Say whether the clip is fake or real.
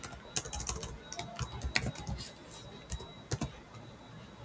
real